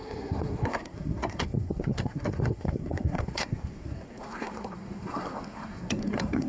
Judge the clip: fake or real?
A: fake